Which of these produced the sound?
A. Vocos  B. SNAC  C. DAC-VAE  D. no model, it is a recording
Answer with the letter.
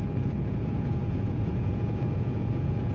A